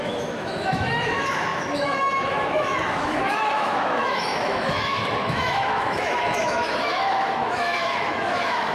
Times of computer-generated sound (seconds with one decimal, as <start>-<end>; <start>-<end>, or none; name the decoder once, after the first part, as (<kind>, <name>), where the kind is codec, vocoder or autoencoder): 0.0-8.7 (autoencoder, DAC-VAE)